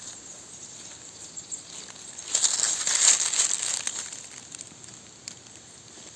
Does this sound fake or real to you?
real